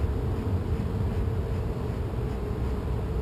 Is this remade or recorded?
recorded